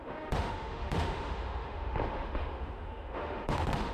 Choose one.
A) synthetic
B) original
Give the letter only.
A